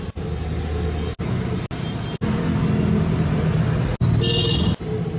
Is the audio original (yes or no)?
yes